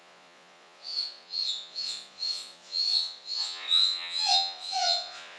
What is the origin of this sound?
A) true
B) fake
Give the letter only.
B